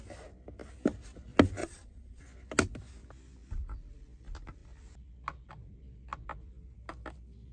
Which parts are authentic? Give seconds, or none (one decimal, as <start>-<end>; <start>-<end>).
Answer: 0.0-1.6; 2.2-7.5